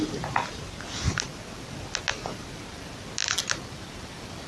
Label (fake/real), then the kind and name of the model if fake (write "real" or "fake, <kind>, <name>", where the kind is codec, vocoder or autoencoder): real